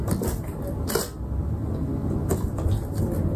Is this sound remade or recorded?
recorded